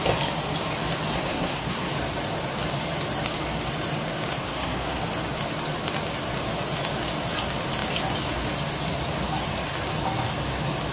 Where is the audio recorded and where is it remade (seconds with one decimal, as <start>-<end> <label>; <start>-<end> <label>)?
0.0-1.1 recorded; 1.1-1.9 remade; 1.9-4.3 recorded; 4.3-5.0 remade; 5.0-10.9 recorded